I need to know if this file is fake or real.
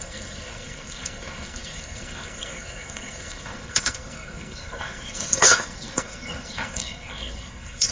fake